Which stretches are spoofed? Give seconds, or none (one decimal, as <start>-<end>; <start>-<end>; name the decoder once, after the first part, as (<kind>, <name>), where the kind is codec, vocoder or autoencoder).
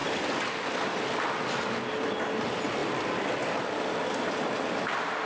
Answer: none